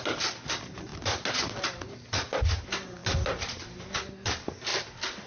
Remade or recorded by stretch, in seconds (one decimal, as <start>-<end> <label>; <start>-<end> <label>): 0.0-4.7 recorded; 4.7-5.3 remade

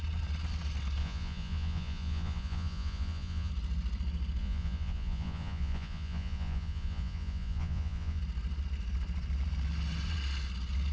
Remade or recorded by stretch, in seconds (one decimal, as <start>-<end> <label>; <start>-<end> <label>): 0.0-1.0 recorded; 1.0-3.5 remade; 3.5-4.4 recorded; 4.4-8.2 remade; 8.2-10.9 recorded

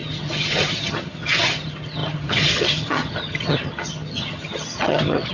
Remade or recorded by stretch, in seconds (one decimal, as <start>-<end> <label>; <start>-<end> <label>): 0.0-5.3 remade

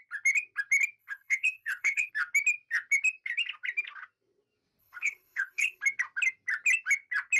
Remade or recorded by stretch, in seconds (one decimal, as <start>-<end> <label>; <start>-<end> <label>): 0.0-1.0 recorded; 1.0-2.1 remade; 2.1-4.8 recorded; 4.8-5.8 remade; 5.8-7.4 recorded

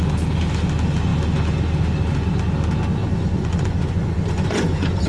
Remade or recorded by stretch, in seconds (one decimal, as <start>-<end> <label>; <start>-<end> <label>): 0.0-3.0 recorded; 3.0-5.1 remade

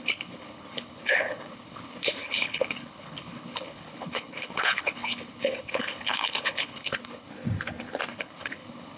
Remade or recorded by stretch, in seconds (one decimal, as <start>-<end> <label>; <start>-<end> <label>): 0.0-7.3 remade; 7.3-8.1 recorded; 8.1-9.0 remade